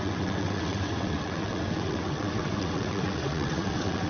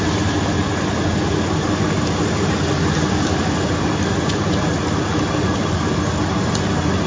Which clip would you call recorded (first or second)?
second